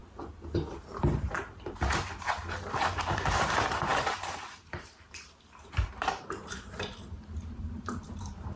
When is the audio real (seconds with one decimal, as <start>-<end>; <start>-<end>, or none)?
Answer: 0.0-1.1